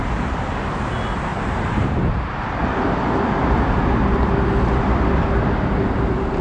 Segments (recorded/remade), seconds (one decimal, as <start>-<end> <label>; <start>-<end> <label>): 0.0-1.3 recorded; 1.3-2.2 remade; 2.2-6.4 recorded